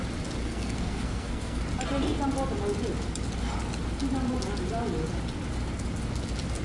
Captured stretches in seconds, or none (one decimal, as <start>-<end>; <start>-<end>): 0.0-0.4; 1.6-6.6

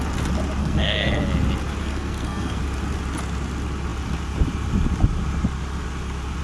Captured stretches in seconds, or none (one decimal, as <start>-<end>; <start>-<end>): 0.0-0.6; 1.2-1.8; 2.6-6.4

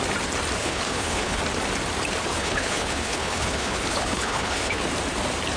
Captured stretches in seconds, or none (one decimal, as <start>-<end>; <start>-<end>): 0.0-0.6; 1.4-2.3; 4.9-5.6

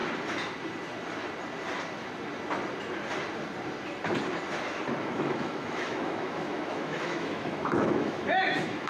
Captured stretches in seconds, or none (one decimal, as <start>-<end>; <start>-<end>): 0.0-5.0

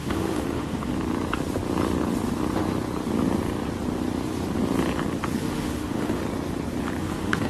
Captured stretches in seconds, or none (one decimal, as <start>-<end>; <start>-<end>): 0.9-5.4; 6.2-7.0